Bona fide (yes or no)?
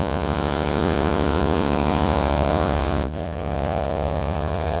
no